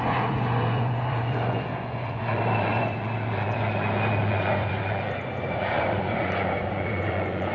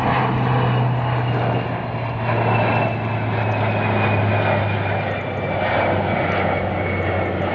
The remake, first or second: first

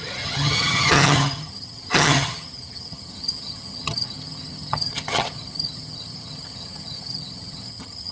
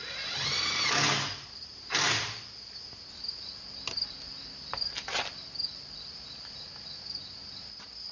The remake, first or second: first